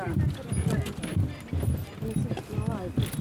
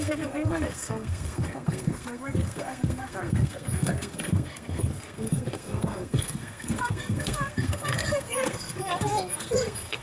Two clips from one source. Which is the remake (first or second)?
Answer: second